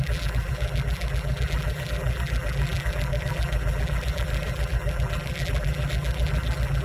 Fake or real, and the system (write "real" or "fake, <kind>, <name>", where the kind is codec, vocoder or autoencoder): fake, vocoder, BigVGAN v2